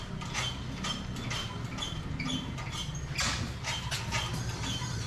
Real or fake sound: real